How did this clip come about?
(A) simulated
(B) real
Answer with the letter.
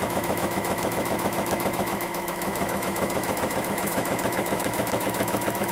A